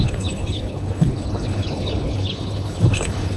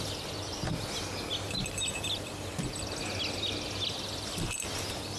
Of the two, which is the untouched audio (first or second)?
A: second